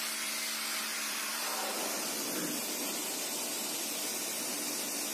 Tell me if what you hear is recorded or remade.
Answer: remade